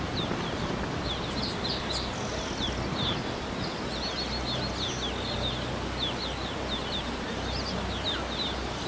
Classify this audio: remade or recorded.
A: recorded